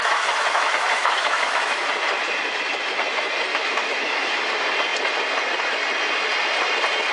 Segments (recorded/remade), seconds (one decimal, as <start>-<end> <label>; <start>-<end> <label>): 0.0-1.9 remade; 1.9-3.5 recorded; 3.5-4.4 remade; 4.4-7.1 recorded